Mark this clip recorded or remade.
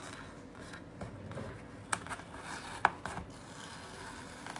recorded